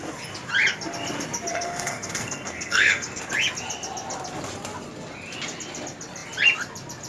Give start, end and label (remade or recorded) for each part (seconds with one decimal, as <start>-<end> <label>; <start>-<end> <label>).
0.0-1.5 recorded; 1.5-3.2 remade; 3.2-7.1 recorded